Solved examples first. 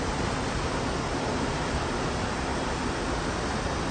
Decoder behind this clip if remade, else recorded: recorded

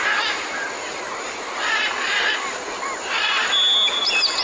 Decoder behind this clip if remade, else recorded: recorded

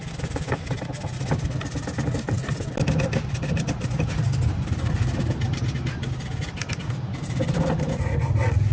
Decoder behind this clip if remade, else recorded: recorded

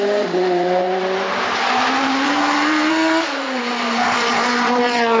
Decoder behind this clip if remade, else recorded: remade, vocoder, BigVGAN v2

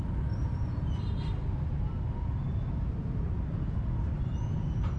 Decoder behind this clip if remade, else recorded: recorded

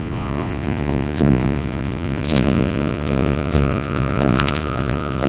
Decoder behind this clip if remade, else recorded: remade, vocoder, Vocos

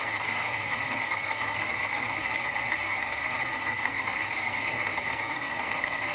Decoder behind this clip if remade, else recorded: remade, codec, SNAC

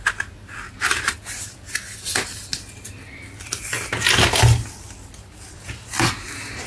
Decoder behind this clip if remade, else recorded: recorded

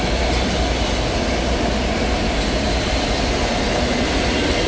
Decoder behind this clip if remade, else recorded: recorded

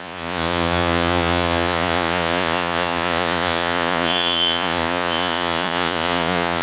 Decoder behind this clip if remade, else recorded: remade, vocoder, Vocos